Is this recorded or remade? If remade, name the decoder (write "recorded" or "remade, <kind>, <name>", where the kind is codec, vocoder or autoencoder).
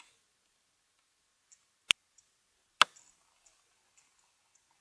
recorded